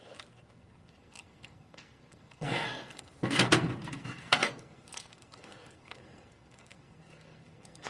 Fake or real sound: fake